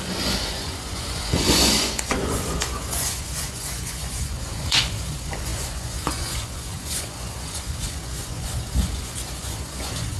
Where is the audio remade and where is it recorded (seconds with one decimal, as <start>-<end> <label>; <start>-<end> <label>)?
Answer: 0.0-10.2 remade